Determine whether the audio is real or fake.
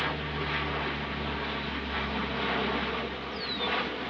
real